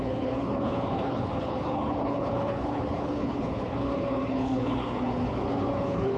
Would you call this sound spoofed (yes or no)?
yes